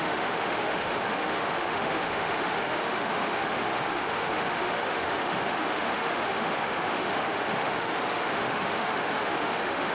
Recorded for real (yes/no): no